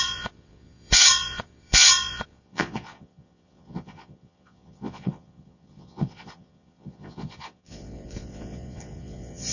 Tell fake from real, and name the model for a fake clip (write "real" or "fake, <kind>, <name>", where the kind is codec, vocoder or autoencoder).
fake, vocoder, Vocos